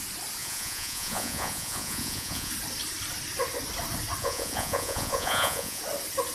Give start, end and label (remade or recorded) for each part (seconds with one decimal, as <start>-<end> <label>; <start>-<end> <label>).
0.0-0.4 recorded; 0.4-2.5 remade; 2.5-4.2 recorded; 4.2-5.8 remade; 5.8-6.3 recorded